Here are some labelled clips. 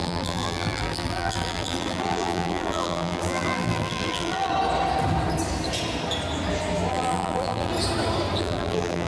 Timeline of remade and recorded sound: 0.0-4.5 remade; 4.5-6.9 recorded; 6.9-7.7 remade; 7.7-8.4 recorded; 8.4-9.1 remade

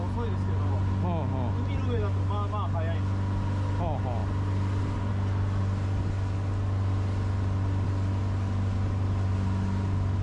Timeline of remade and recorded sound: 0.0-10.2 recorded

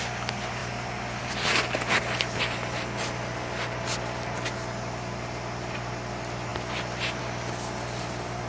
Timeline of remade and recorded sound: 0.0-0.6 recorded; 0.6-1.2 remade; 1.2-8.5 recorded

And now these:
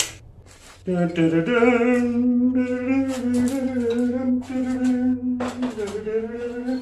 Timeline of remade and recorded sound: 0.0-6.8 recorded

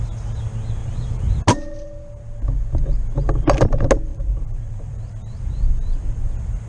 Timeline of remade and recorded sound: 0.0-0.8 recorded; 0.8-1.4 remade; 1.4-4.1 recorded; 4.1-5.5 remade; 5.5-6.7 recorded

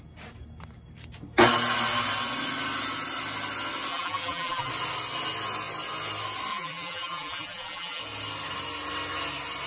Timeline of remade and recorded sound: 0.0-3.9 recorded; 3.9-4.7 remade; 4.7-6.5 recorded; 6.5-8.0 remade; 8.0-9.7 recorded

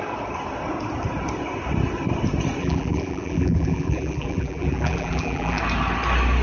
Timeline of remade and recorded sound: 0.0-2.6 recorded; 2.6-5.6 remade; 5.6-6.4 recorded

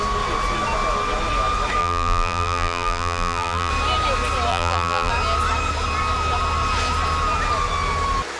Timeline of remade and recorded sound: 0.0-1.8 recorded; 1.8-3.7 remade; 3.7-4.5 recorded; 4.5-5.1 remade; 5.1-8.4 recorded